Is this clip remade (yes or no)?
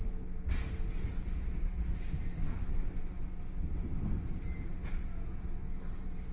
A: no